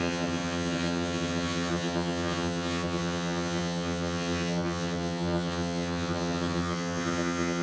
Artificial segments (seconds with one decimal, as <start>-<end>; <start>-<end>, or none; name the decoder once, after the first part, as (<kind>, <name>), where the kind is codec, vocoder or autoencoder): 0.0-7.6 (vocoder, HiFi-GAN)